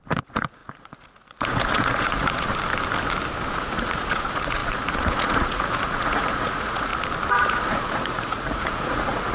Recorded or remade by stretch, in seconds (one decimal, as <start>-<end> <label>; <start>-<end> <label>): 0.0-2.5 remade; 2.5-3.5 recorded; 3.5-6.9 remade; 6.9-7.5 recorded; 7.5-9.3 remade